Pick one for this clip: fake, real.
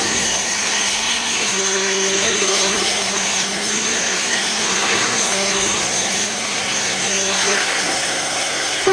fake